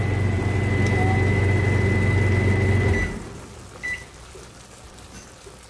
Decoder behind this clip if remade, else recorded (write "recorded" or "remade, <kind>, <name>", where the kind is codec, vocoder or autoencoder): recorded